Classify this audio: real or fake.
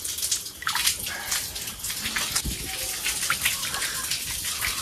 real